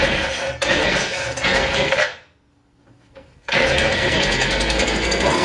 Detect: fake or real fake